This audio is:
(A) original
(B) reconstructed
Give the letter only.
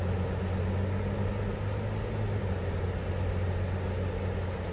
A